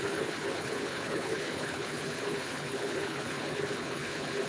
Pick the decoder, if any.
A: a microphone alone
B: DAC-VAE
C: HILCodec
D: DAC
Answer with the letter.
C